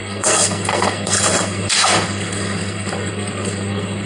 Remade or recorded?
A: remade